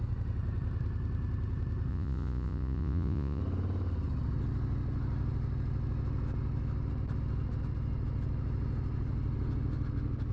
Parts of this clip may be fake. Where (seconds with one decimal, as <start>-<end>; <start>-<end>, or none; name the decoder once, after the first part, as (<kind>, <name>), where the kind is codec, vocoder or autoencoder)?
1.9-3.4 (vocoder, Vocos)